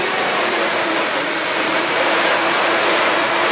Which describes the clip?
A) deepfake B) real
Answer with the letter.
A